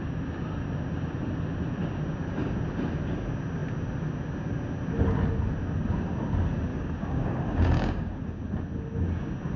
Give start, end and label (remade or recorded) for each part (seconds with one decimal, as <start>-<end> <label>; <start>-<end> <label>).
0.0-6.7 recorded; 6.7-8.4 remade; 8.4-9.6 recorded